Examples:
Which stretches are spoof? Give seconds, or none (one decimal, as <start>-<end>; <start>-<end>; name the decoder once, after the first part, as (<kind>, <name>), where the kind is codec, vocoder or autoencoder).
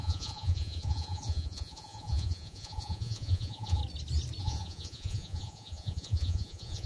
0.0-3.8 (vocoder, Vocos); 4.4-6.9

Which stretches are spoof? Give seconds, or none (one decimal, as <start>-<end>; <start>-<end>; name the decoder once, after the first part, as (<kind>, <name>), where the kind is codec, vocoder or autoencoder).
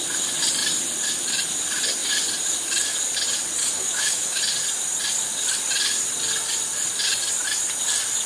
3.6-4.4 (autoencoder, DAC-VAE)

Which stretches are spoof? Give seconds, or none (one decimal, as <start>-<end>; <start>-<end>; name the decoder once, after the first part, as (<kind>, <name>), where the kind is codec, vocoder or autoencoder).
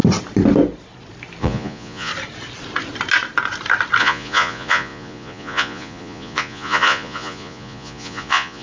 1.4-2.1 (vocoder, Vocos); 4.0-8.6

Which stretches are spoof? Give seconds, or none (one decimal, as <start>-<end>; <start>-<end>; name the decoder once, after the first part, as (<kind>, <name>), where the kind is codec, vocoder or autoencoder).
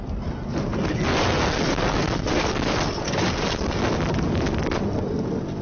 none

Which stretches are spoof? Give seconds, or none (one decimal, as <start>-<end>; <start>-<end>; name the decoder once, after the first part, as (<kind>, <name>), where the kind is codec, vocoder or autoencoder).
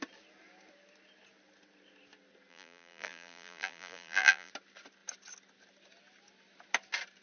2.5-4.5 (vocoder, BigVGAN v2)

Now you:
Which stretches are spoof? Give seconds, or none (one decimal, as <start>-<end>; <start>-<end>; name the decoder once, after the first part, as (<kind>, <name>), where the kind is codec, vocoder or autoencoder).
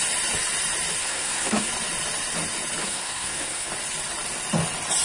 1.0-1.7 (codec, SNAC); 2.8-3.7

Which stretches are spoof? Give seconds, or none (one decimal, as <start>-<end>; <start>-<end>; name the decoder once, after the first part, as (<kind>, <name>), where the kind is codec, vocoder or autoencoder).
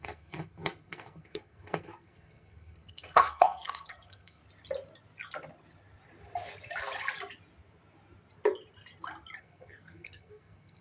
0.0-4.4 (codec, SNAC); 9.4-10.8